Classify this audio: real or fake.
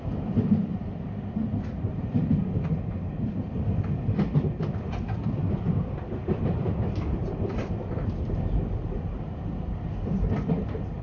fake